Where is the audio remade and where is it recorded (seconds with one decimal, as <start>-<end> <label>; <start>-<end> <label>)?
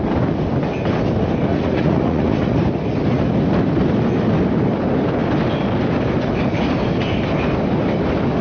0.0-1.5 recorded; 1.5-2.6 remade; 2.6-8.4 recorded